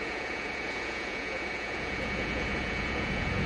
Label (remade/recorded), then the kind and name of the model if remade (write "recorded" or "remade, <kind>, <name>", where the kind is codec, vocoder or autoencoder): remade, vocoder, Vocos